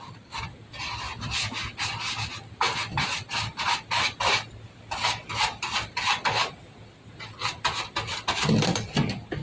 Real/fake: real